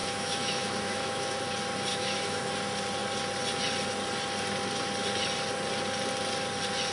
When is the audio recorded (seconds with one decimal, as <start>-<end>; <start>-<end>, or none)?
1.5-1.9; 2.5-6.9